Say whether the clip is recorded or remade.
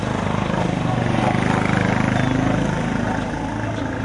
recorded